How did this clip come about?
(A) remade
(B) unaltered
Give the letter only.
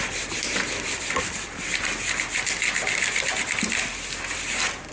B